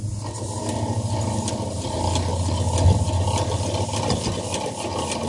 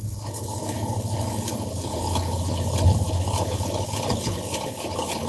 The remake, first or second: second